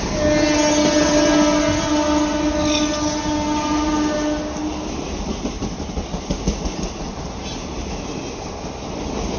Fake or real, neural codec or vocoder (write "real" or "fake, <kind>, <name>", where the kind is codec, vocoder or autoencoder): real